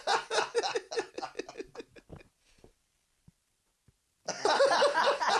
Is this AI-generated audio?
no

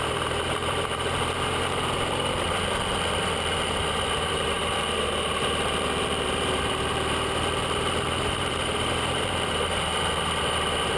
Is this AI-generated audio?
yes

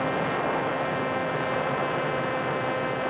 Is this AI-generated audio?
no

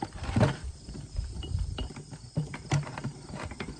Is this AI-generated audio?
yes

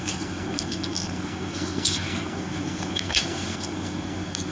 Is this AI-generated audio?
yes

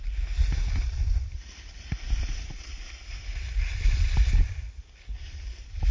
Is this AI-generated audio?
no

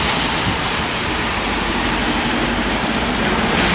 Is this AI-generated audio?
no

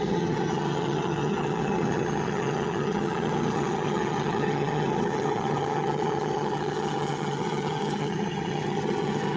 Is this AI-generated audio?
yes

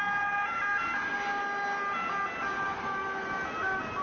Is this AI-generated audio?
no